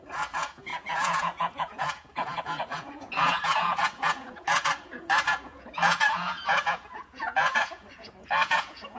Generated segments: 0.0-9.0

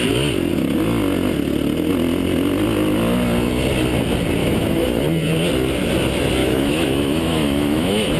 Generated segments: 4.4-5.0; 6.4-8.2